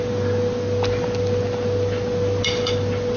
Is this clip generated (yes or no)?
no